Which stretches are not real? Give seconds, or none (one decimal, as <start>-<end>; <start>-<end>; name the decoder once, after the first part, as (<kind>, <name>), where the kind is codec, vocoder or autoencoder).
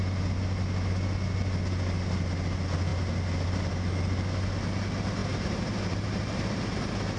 5.2-6.7 (vocoder, BigVGAN v2)